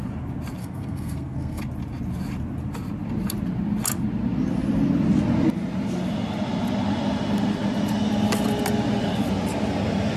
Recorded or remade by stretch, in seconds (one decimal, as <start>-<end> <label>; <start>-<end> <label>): 0.0-0.6 recorded; 0.6-1.6 remade; 1.6-10.2 recorded